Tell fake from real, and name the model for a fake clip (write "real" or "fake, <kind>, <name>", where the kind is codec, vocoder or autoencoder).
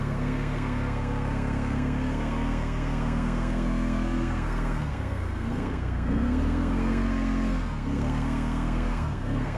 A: fake, codec, SNAC